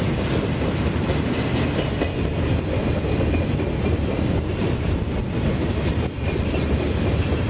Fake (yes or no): no